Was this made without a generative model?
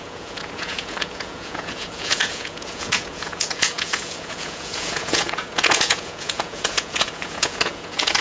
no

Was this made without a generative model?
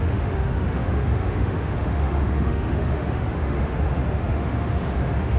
no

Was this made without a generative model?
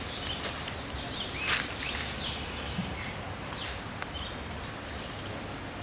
yes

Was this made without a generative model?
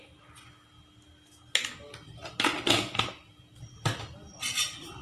yes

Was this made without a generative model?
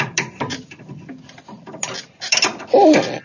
yes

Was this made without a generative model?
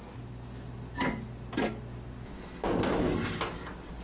yes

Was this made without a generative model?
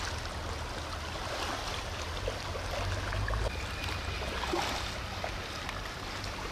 yes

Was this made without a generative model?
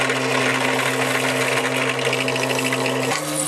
yes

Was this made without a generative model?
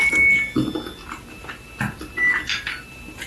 yes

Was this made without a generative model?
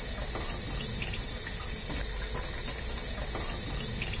yes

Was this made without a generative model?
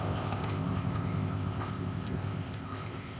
no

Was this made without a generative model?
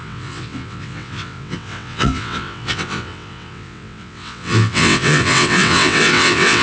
no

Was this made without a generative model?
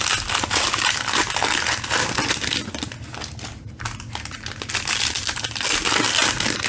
yes